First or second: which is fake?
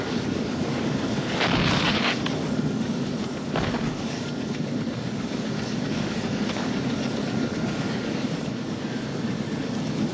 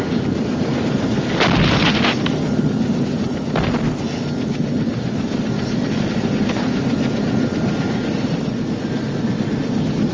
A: first